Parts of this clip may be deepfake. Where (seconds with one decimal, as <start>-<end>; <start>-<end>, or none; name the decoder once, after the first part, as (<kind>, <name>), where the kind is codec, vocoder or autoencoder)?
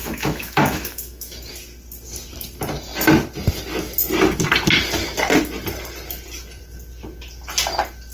0.0-1.5 (autoencoder, DAC-VAE)